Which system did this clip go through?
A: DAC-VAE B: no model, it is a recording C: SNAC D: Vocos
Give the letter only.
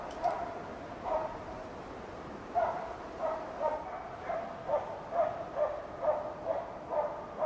B